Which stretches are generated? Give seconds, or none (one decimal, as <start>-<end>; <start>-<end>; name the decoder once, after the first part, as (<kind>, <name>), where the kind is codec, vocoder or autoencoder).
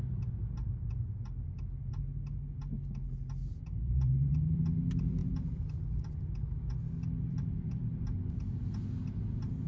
3.4-4.6 (vocoder, BigVGAN v2); 5.2-6.1